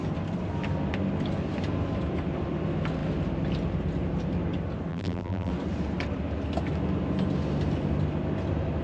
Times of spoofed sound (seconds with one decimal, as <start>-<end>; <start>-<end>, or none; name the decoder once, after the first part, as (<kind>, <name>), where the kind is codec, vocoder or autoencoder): 4.9-5.5 (vocoder, BigVGAN v2)